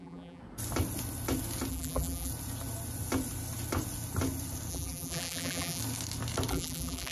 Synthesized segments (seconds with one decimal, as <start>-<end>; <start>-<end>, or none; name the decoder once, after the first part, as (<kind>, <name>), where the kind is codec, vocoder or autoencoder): 0.0-0.4 (vocoder, BigVGAN v2); 1.7-2.3; 4.7-5.8; 6.5-7.1